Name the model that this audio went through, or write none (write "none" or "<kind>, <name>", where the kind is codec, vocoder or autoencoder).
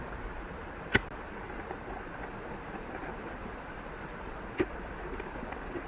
none